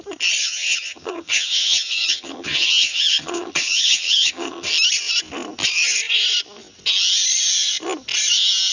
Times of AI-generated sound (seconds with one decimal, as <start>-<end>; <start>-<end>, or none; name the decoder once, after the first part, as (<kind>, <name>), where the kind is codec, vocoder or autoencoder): 0.4-4.7 (vocoder, HiFi-GAN)